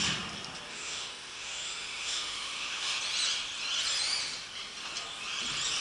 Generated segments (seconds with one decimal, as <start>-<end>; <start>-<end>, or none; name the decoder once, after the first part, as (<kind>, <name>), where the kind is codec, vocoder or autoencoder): 0.7-3.0 (autoencoder, DAC-VAE)